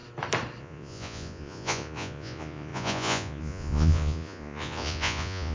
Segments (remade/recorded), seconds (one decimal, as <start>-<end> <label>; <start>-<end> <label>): 0.0-0.6 recorded; 0.6-5.5 remade